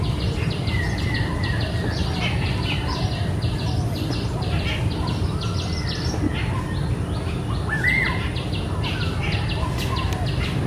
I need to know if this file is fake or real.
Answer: real